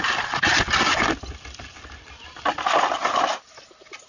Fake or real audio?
real